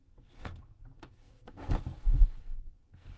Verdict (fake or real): fake